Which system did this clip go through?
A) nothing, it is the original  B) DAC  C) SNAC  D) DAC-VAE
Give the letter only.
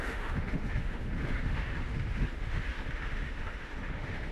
D